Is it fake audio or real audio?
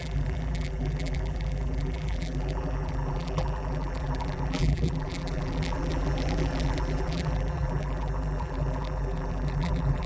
fake